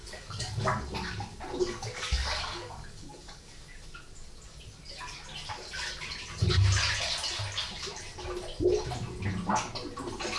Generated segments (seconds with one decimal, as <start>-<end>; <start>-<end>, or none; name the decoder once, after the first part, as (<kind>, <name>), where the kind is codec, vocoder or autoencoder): 0.0-0.8 (codec, DAC); 1.6-3.8